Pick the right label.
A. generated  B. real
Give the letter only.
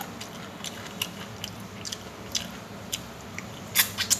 B